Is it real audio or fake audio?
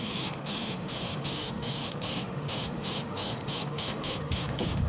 fake